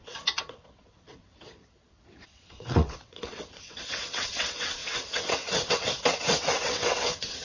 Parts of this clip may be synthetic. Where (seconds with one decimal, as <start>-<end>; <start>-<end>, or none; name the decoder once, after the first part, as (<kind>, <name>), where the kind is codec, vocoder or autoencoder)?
0.0-7.4 (vocoder, WaveNeXt)